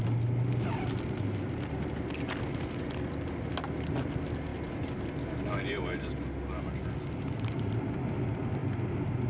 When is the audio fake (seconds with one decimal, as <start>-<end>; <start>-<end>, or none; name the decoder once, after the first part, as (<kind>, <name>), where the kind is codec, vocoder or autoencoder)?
none